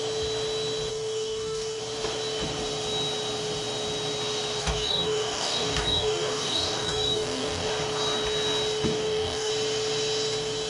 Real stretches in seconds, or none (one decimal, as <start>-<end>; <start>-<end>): 0.0-0.9; 1.8-4.6; 7.7-8.9; 9.5-10.7